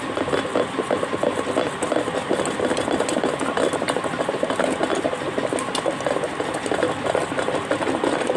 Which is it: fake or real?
real